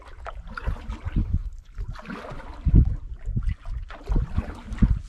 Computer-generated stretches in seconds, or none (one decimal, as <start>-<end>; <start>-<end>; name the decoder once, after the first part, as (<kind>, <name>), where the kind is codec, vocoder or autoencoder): 1.2-1.7 (codec, HILCodec)